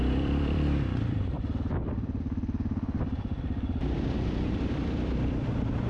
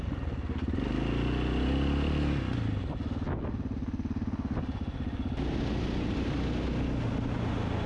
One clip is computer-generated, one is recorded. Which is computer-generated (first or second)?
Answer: first